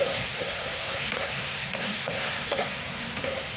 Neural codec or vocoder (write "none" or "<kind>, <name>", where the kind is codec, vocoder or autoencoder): codec, SNAC